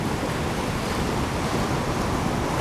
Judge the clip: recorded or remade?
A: recorded